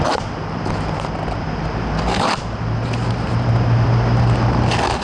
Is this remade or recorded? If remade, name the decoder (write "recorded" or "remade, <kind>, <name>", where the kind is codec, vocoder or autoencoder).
recorded